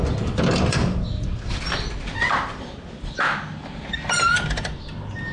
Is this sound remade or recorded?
recorded